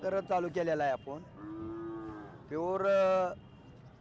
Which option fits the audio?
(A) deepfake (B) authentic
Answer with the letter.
B